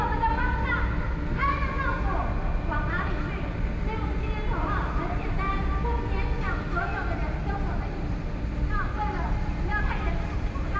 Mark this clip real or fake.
real